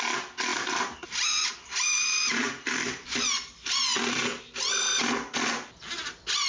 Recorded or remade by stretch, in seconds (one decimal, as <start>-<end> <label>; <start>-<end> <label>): 0.0-0.5 recorded; 0.5-4.4 remade; 4.4-6.5 recorded